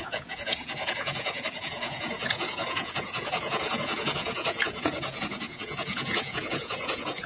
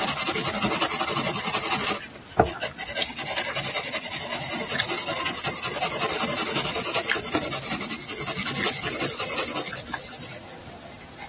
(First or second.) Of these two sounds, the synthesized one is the first